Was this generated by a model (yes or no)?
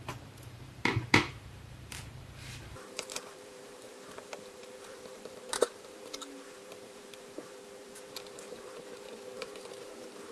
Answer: yes